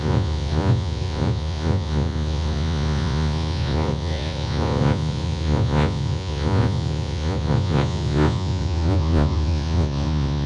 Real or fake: fake